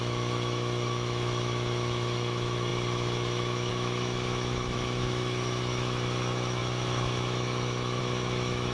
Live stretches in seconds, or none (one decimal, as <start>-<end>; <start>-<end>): none